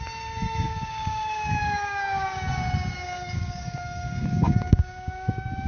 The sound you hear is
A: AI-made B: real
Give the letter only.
A